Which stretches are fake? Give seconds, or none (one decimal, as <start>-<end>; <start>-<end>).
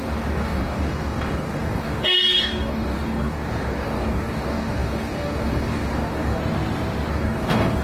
0.0-6.4; 7.1-7.8